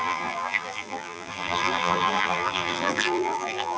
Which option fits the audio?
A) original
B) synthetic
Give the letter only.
B